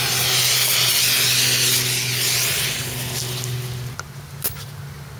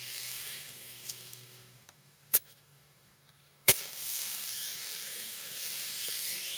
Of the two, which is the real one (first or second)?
first